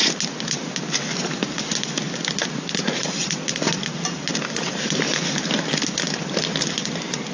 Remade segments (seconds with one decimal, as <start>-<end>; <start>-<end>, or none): none